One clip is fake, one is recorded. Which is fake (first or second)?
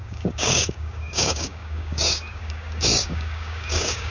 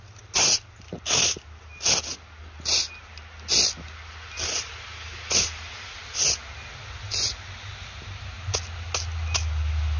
first